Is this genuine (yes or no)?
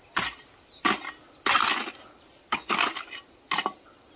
yes